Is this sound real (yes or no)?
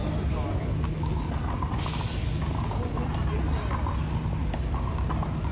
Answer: yes